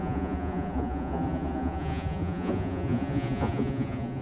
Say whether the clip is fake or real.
fake